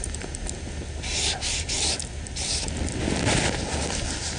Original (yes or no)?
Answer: yes